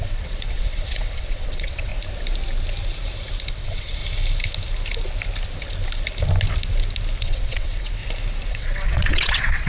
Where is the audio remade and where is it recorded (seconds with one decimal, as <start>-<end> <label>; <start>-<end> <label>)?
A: 0.0-1.9 remade; 1.9-3.5 recorded; 3.5-4.0 remade; 4.0-7.2 recorded; 7.2-8.0 remade; 8.0-8.5 recorded; 8.5-9.7 remade